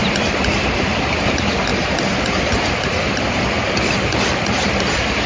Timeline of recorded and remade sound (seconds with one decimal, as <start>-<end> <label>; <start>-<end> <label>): 0.0-5.3 recorded